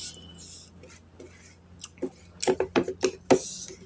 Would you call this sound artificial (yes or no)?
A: no